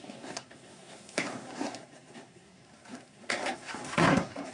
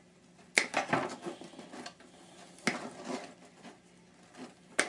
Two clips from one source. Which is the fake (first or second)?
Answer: first